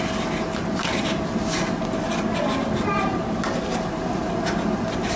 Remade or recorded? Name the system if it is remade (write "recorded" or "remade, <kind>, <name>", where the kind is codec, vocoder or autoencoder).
recorded